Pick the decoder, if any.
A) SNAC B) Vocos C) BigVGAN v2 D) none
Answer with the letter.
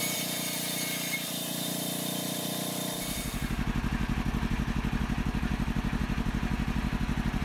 D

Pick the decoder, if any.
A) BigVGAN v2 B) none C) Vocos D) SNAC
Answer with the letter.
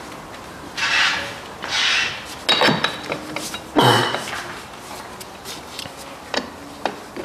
B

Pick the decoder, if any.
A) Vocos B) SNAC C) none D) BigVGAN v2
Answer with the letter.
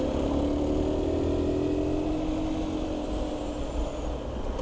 C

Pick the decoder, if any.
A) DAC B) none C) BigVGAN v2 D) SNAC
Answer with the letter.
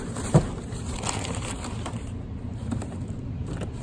C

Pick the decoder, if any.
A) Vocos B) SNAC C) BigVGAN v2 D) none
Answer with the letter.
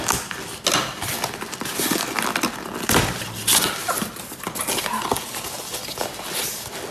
D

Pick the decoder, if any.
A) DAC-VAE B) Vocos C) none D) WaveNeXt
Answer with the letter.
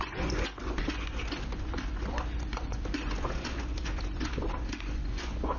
B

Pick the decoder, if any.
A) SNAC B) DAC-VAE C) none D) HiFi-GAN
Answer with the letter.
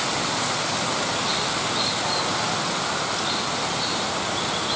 C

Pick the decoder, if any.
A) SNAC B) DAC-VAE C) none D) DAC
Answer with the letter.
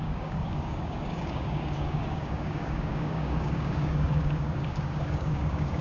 D